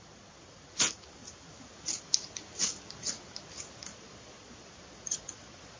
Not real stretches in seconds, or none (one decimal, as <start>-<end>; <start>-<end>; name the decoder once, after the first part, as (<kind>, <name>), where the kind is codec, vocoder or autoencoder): 3.9-5.8 (vocoder, Vocos)